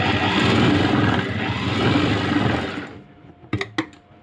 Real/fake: real